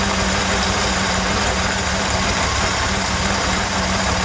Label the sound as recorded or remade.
recorded